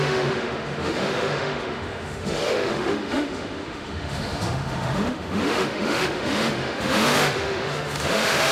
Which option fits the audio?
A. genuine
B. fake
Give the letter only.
B